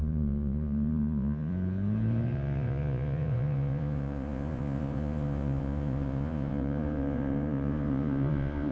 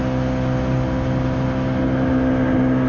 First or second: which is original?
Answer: second